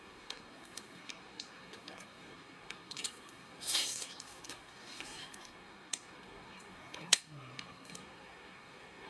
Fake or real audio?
fake